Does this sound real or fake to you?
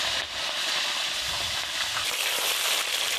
real